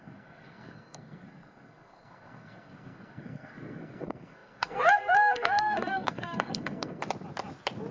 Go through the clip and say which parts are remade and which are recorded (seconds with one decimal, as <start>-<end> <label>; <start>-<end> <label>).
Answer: 0.0-7.0 remade; 7.0-7.9 recorded